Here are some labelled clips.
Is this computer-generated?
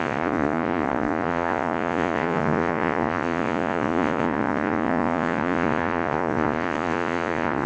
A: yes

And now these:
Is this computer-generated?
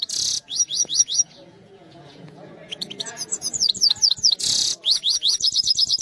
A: yes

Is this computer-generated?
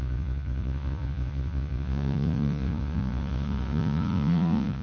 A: yes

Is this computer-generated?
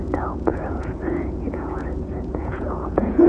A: yes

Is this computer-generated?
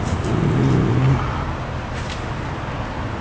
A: no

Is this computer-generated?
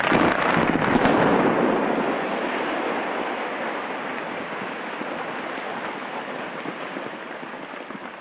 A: no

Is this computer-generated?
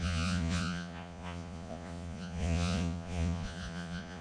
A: yes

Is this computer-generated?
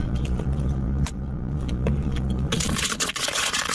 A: yes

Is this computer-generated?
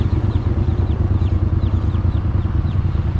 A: yes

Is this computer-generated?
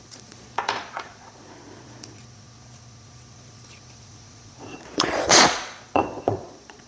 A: yes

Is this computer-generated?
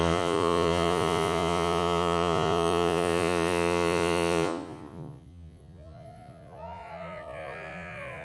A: yes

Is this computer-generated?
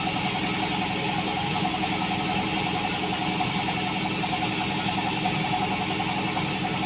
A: no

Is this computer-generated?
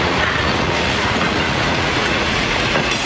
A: yes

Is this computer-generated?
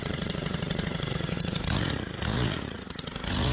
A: yes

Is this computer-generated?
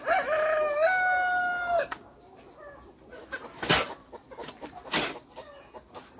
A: no